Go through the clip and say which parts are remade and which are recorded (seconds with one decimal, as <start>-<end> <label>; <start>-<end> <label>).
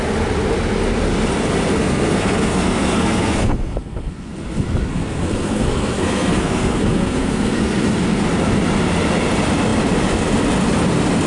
0.0-1.8 recorded; 1.8-4.3 remade; 4.3-4.9 recorded; 4.9-7.8 remade; 7.8-11.3 recorded